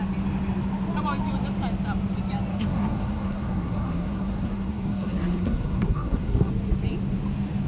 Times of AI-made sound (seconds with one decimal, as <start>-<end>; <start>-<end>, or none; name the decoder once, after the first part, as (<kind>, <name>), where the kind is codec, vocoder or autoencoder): 2.5-6.5 (codec, SNAC)

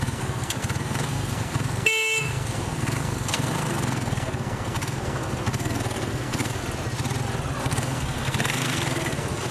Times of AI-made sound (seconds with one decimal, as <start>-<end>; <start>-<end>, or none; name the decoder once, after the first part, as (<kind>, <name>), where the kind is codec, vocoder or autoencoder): 0.0-6.6 (codec, SNAC); 7.6-9.5

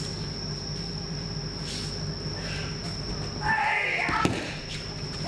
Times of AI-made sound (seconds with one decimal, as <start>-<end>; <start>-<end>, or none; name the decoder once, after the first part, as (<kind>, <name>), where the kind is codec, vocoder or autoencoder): none

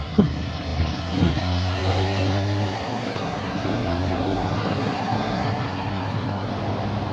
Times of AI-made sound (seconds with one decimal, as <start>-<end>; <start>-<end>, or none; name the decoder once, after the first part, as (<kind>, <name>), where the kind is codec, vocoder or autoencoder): 0.0-6.5 (codec, SNAC)

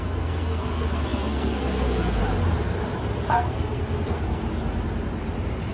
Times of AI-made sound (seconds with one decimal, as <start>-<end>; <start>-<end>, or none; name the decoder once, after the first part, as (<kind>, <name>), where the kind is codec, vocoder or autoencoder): 0.0-2.2 (codec, SNAC); 3.3-4.4